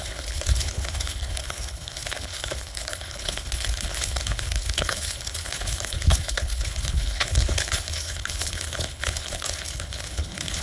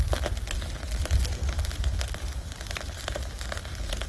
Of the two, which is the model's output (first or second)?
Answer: first